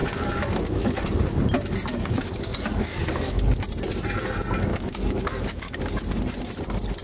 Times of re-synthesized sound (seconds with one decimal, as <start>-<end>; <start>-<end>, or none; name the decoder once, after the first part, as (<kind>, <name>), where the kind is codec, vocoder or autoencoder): 0.0-1.4 (codec, DAC); 1.9-3.5; 4.7-5.8